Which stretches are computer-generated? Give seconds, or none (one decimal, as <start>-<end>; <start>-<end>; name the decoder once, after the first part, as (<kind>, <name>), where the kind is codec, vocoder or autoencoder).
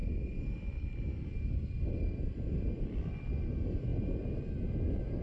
0.0-3.1 (vocoder, BigVGAN v2); 3.9-5.2